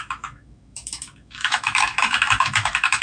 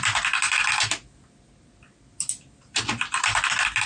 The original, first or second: second